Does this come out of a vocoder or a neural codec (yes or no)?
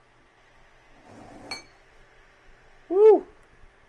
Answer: no